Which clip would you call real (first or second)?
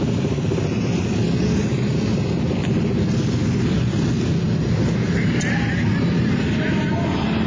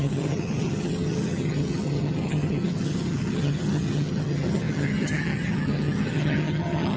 first